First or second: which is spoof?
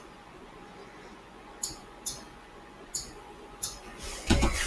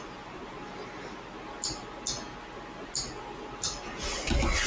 first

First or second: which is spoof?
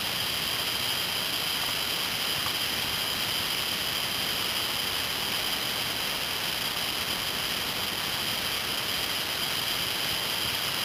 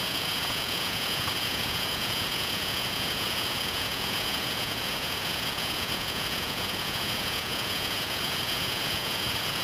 second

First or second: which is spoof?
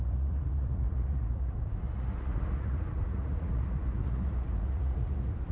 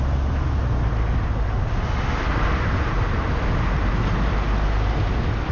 first